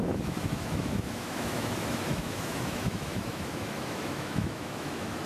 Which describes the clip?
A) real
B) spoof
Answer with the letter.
B